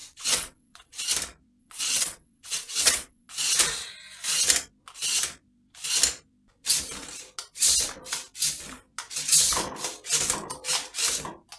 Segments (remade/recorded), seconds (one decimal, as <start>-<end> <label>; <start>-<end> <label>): 0.0-1.0 remade; 1.0-1.6 recorded; 1.6-3.3 remade; 3.3-11.6 recorded

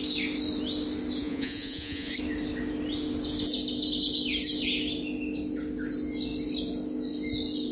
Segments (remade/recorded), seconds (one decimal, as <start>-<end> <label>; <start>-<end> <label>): 0.0-1.2 recorded; 1.2-2.1 remade; 2.1-7.7 recorded

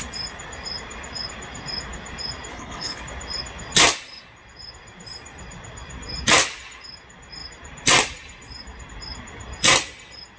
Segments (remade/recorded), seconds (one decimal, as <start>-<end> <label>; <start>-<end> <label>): 0.0-2.5 recorded; 2.5-3.0 remade; 3.0-10.4 recorded

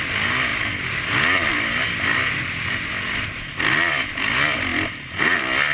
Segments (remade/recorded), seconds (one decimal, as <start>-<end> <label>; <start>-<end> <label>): 0.0-5.7 recorded

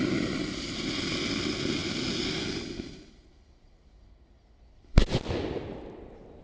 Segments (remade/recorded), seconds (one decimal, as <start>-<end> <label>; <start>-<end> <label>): 0.0-6.4 recorded

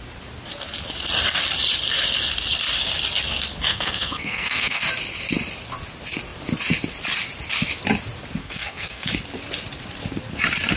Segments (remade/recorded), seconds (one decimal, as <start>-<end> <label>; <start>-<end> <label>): 0.0-3.7 recorded; 3.7-4.8 remade; 4.8-8.4 recorded; 8.4-9.1 remade; 9.1-10.8 recorded

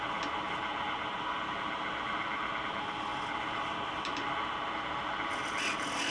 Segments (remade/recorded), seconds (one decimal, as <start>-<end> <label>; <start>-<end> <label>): 0.0-6.1 recorded

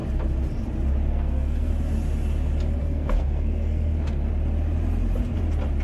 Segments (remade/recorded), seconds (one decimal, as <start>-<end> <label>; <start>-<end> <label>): 0.0-1.1 recorded; 1.1-1.7 remade; 1.7-2.8 recorded; 2.8-4.3 remade; 4.3-5.8 recorded